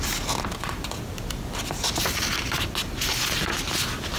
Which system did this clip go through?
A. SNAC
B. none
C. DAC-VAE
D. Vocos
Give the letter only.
B